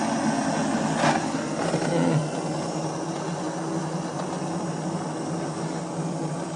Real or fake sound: real